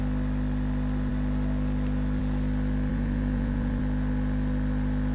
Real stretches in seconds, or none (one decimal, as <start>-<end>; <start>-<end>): 0.0-2.9; 3.8-5.1